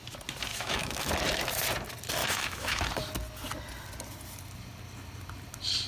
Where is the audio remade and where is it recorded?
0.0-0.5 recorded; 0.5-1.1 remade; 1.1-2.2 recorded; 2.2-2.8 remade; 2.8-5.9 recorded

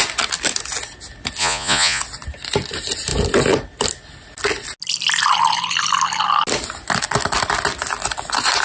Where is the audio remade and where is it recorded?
0.0-1.4 recorded; 1.4-2.0 remade; 2.0-8.6 recorded